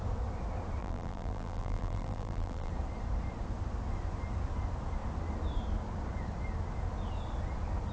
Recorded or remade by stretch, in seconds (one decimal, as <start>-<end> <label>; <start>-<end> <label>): 0.0-0.8 recorded; 0.8-2.7 remade; 2.7-7.9 recorded